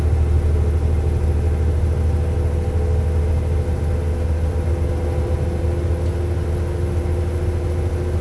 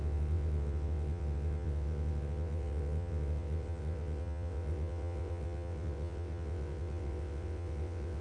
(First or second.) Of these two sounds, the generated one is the second